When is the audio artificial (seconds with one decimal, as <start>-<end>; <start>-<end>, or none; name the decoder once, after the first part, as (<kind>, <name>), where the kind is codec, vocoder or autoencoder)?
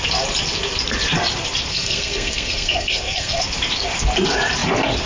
1.7-3.4 (codec, SNAC)